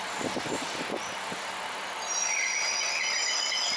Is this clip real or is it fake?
real